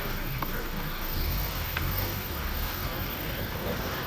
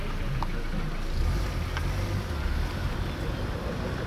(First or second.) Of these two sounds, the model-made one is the first